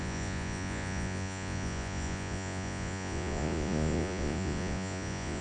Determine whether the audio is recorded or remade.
remade